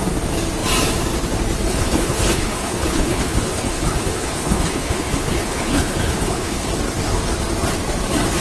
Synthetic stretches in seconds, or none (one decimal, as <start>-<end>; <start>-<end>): 1.7-6.7